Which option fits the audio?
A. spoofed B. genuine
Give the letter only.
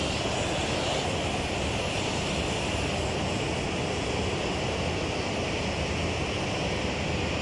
B